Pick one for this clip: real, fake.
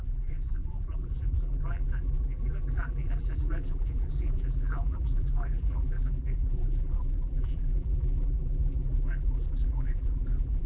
fake